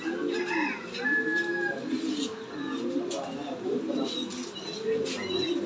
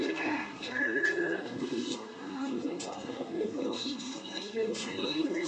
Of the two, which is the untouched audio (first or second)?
first